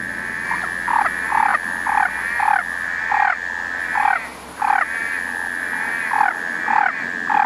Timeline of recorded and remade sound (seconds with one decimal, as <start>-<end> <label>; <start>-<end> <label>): 0.0-7.5 recorded